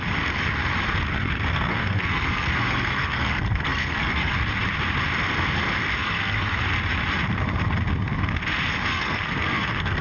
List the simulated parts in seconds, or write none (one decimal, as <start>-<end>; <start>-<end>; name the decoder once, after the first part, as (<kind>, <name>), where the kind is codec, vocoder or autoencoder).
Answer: 1.1-4.3 (codec, SNAC); 6.0-6.6; 8.9-10.0